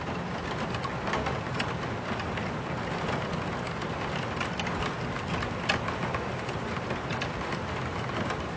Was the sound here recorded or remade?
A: recorded